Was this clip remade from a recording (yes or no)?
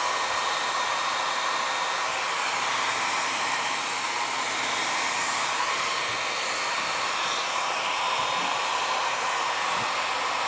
no